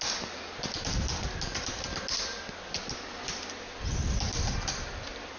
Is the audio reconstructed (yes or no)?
no